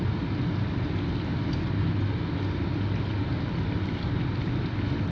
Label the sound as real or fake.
real